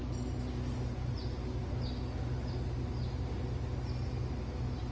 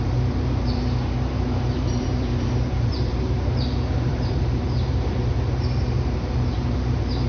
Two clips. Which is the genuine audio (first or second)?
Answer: first